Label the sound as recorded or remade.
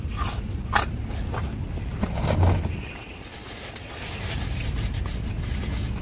recorded